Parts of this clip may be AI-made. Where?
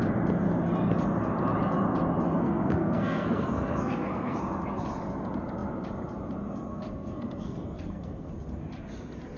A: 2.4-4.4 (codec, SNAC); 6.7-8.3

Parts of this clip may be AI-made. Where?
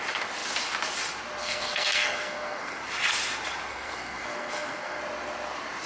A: 1.4-2.8 (codec, SNAC); 3.7-5.0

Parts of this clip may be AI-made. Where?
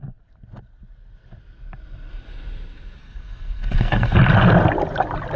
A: 3.0-4.1 (codec, SNAC)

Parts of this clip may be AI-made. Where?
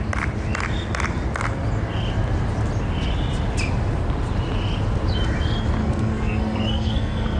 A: 5.8-7.4 (codec, SNAC)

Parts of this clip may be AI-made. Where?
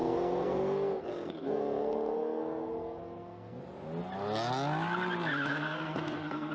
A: 0.0-3.6 (codec, SNAC); 5.5-6.5